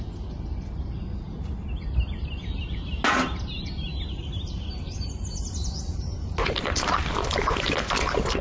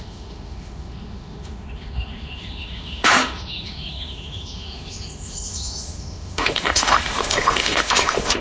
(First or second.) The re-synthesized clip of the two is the second